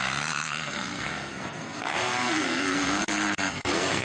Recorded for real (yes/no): no